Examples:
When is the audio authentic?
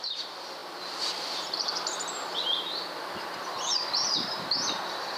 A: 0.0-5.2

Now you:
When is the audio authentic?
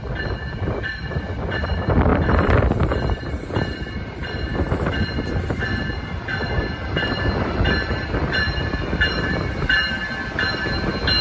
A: 4.5-7.9; 10.0-11.2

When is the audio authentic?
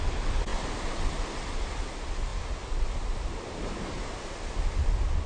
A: 0.0-5.3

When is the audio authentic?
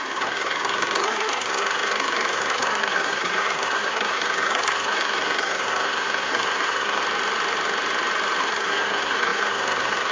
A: 7.0-8.4